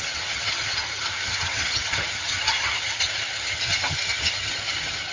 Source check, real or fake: fake